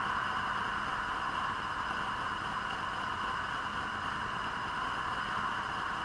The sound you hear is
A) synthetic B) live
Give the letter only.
B